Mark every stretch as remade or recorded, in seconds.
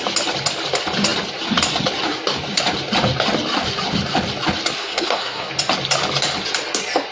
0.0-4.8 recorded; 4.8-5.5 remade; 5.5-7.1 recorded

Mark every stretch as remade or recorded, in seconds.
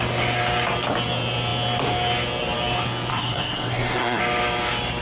0.0-3.1 recorded; 3.1-4.2 remade; 4.2-5.0 recorded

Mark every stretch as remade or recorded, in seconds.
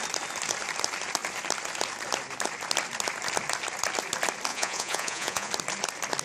0.0-4.5 recorded; 4.5-5.5 remade; 5.5-6.2 recorded